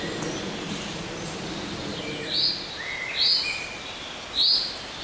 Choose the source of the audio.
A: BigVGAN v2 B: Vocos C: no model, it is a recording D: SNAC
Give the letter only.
C